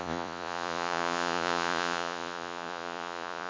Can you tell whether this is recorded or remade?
remade